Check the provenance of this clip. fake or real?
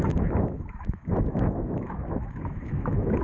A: fake